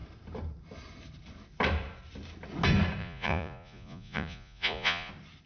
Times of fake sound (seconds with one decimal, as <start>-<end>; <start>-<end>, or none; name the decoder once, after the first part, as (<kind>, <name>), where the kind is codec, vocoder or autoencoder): 3.0-5.1 (vocoder, Vocos)